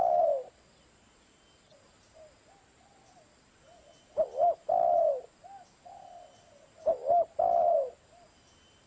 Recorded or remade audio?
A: recorded